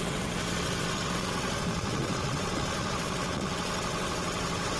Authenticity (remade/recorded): remade